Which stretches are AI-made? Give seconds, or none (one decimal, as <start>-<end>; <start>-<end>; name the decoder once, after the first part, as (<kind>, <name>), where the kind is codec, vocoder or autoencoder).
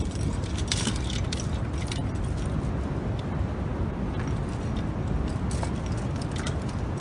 none